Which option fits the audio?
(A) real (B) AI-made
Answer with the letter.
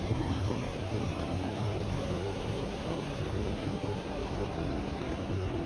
B